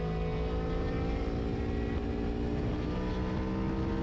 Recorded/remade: recorded